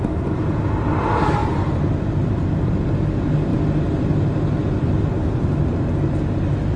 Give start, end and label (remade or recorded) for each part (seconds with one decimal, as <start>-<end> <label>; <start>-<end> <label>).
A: 0.0-1.4 recorded; 1.4-2.9 remade; 2.9-6.8 recorded

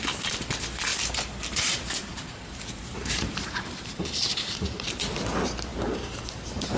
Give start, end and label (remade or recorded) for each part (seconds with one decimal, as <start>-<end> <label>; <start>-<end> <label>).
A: 0.0-0.9 recorded; 0.9-5.0 remade; 5.0-5.7 recorded; 5.7-6.8 remade

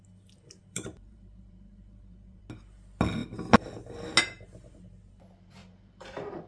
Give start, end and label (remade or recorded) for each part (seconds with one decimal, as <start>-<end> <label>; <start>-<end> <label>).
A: 0.0-0.7 recorded; 0.7-2.4 remade; 2.4-5.6 recorded; 5.6-6.5 remade

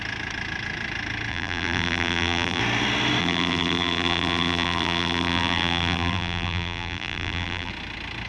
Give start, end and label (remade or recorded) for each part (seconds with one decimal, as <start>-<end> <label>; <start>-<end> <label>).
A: 0.0-1.3 recorded; 1.3-2.6 remade; 2.6-3.2 recorded; 3.2-7.7 remade; 7.7-8.3 recorded

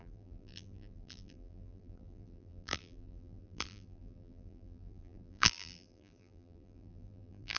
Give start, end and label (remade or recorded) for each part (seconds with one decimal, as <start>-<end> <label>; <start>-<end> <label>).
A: 0.0-7.6 remade

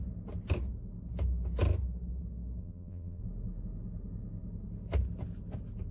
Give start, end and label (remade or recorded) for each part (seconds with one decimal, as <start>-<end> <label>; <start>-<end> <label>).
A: 0.0-2.6 recorded; 2.6-3.2 remade; 3.2-5.9 recorded